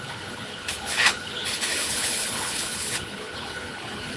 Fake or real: fake